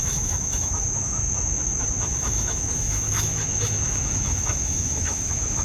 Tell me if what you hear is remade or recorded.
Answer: remade